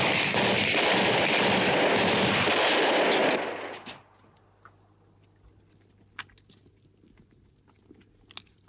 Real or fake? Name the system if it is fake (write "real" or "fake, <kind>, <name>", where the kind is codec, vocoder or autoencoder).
real